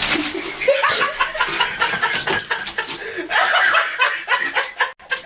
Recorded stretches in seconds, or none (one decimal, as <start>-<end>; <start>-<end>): 0.0-5.3